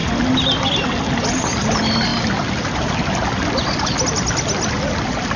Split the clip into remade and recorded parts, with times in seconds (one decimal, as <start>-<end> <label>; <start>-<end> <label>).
0.0-5.4 recorded